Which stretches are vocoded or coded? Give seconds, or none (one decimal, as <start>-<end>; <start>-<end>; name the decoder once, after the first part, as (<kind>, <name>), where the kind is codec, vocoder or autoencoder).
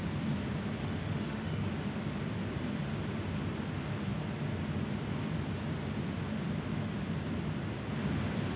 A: 0.8-1.6 (autoencoder, DAC-VAE)